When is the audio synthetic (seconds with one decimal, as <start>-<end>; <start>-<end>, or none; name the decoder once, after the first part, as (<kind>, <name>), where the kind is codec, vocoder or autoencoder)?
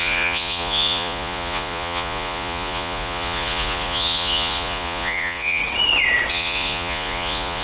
0.0-5.6 (vocoder, Vocos); 6.3-7.6